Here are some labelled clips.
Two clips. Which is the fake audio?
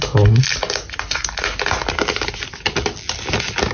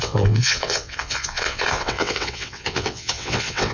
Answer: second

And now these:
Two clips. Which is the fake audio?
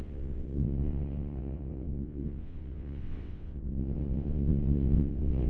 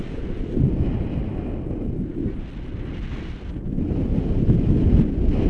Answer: first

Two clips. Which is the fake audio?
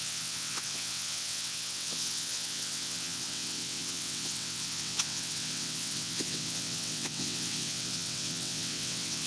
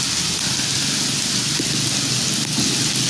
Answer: first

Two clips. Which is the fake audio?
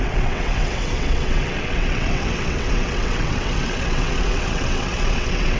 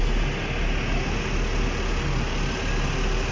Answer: first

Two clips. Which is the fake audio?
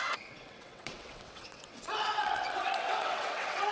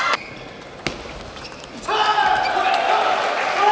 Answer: first